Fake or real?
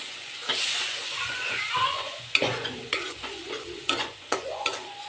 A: fake